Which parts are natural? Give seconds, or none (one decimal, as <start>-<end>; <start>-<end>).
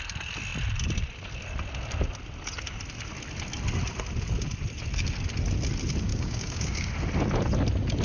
0.0-6.1; 6.9-8.0